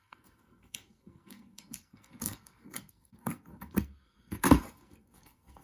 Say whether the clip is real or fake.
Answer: fake